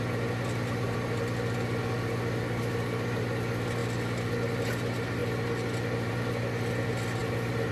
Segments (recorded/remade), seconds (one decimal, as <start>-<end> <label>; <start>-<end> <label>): 0.0-7.2 recorded; 7.2-7.7 remade